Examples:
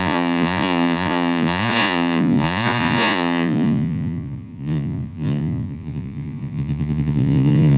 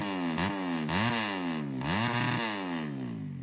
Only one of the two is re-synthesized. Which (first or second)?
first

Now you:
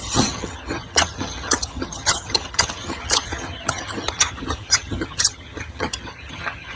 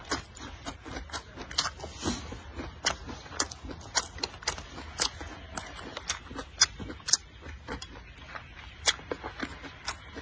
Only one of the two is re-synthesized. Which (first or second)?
first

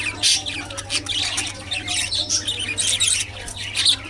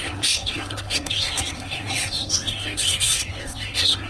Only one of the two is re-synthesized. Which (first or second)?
second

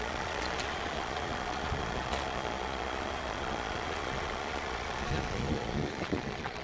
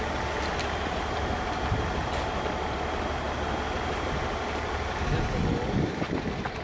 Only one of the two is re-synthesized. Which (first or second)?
first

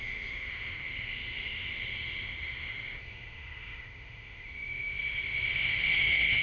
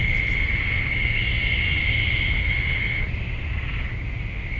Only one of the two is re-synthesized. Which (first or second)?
first